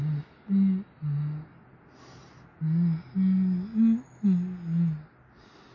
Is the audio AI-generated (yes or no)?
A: no